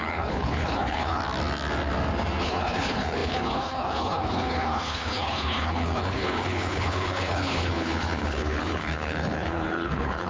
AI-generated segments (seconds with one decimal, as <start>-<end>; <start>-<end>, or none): 0.0-1.2; 2.4-10.3